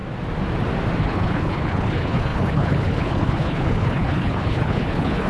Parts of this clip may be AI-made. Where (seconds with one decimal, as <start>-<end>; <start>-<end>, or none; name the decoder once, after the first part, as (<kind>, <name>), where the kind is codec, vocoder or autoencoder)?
1.0-5.3 (codec, HILCodec)

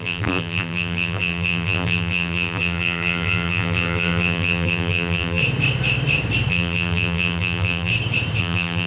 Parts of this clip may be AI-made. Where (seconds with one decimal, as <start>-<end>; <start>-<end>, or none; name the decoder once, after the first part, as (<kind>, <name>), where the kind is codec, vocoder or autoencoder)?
0.0-5.4 (vocoder, BigVGAN v2); 6.5-7.9; 8.4-8.9

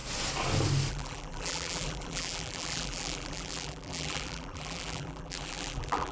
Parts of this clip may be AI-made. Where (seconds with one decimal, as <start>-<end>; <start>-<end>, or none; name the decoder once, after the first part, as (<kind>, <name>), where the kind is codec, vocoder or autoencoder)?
0.9-6.1 (vocoder, BigVGAN v2)

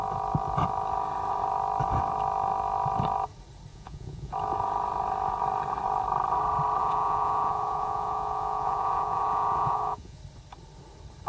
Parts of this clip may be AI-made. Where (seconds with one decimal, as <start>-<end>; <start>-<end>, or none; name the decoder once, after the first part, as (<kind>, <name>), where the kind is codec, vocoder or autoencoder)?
3.7-4.3 (vocoder, Vocos); 6.8-10.2

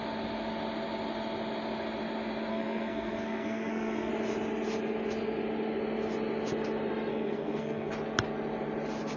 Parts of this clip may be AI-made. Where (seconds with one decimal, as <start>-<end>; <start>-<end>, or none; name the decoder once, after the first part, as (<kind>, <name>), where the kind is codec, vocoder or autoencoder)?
2.5-4.1 (codec, SNAC); 7.1-7.9

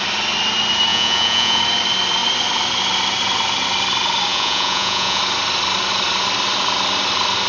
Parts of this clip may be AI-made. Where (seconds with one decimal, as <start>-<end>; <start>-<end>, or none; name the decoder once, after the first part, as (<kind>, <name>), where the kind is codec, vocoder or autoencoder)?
0.9-1.6 (vocoder, Vocos); 4.3-5.2

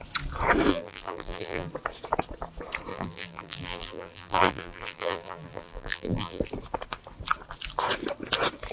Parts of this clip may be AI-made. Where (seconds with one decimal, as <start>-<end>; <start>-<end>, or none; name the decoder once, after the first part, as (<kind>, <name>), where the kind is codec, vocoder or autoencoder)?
0.7-1.7 (vocoder, BigVGAN v2); 2.9-6.4